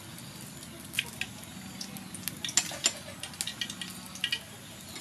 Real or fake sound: real